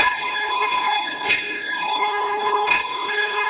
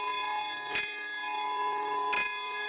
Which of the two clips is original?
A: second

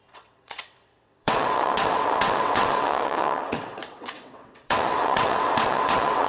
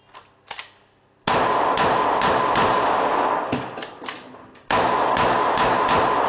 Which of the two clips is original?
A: second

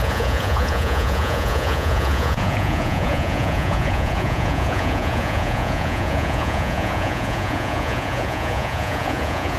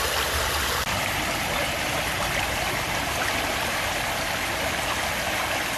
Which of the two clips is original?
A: second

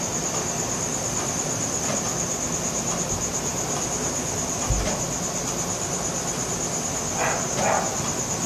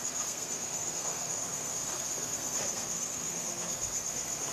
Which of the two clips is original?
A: first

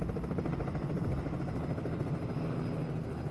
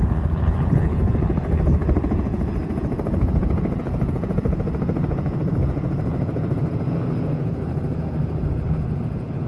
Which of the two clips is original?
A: first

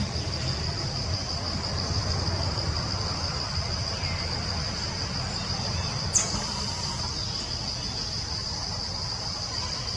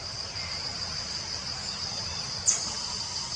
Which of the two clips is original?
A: first